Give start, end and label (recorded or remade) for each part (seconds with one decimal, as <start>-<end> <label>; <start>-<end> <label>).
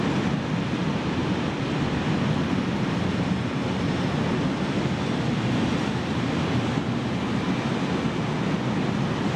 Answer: 0.0-1.2 recorded; 1.2-2.0 remade; 2.0-9.4 recorded